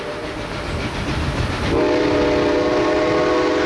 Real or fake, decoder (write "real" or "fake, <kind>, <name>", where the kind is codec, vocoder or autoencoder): real